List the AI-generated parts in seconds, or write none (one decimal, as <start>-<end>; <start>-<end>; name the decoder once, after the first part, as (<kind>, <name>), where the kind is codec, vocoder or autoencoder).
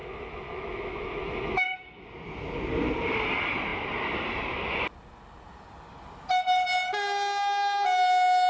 0.0-2.0 (autoencoder, DAC-VAE)